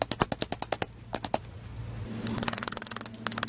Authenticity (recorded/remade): recorded